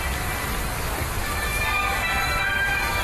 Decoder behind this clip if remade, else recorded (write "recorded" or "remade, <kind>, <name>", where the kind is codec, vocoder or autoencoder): recorded